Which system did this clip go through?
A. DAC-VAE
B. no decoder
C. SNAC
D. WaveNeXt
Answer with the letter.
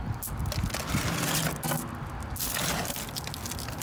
B